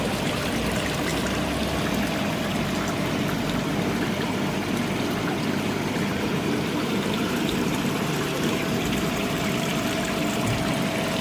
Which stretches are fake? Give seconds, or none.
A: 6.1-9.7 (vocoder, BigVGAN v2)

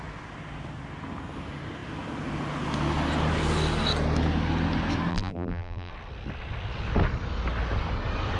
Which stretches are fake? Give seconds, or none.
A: 5.1-5.9 (vocoder, BigVGAN v2)

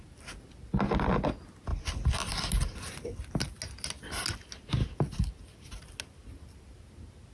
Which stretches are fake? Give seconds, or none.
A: none